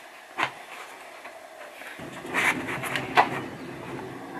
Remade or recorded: recorded